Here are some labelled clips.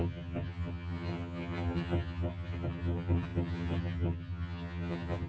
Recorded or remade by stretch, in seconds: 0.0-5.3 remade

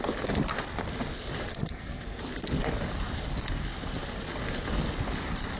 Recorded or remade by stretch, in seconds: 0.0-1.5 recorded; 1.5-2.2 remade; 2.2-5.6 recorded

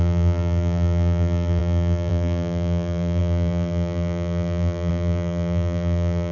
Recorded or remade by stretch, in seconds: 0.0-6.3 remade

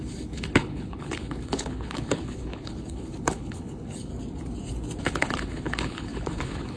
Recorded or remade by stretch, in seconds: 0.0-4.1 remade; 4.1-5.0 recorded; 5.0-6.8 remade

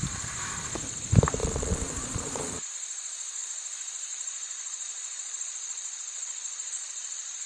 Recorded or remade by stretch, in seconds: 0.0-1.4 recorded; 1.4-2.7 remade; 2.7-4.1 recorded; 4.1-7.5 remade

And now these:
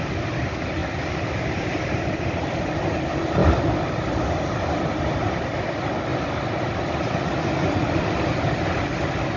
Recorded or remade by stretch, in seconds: 0.0-0.8 recorded; 0.8-2.8 remade; 2.8-3.4 recorded; 3.4-4.5 remade; 4.5-6.1 recorded; 6.1-8.4 remade; 8.4-9.4 recorded

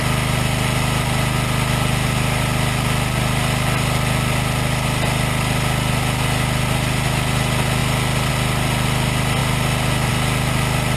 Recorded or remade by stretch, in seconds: 0.0-11.0 recorded

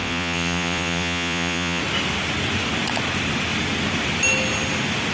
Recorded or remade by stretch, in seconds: 0.0-1.8 remade; 1.8-5.1 recorded